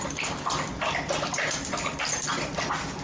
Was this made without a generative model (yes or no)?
yes